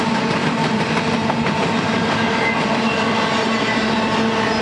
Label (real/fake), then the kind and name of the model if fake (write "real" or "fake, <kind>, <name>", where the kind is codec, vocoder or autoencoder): real